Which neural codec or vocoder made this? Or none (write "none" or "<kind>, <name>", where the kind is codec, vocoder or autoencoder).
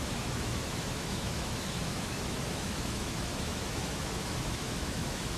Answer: autoencoder, DAC-VAE